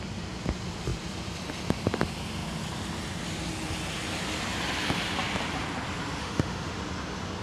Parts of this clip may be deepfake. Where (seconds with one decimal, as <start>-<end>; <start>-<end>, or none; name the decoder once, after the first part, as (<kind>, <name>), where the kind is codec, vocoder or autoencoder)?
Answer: 6.2-6.8 (autoencoder, DAC-VAE)